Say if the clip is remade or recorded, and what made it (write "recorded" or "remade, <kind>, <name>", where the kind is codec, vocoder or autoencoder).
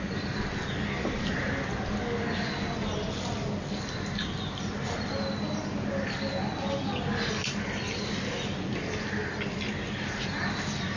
recorded